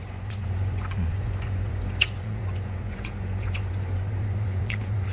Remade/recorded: remade